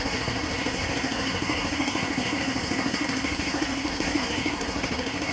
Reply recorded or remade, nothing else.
remade